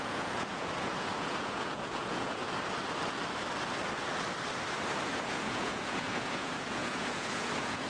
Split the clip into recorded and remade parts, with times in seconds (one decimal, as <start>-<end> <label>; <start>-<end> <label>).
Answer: 0.0-2.4 remade; 2.4-5.1 recorded; 5.1-7.9 remade